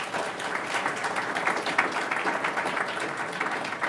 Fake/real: real